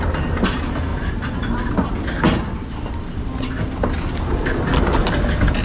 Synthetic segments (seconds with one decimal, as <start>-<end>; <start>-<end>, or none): none